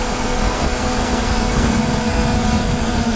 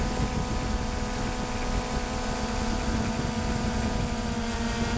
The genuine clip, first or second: second